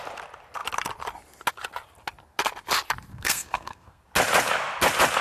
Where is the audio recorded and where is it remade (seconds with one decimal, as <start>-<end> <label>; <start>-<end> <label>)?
0.0-3.1 recorded; 3.1-4.0 remade; 4.0-5.2 recorded